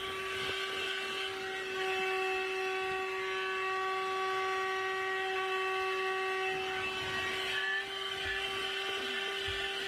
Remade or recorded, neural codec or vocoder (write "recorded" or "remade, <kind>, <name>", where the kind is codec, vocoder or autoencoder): recorded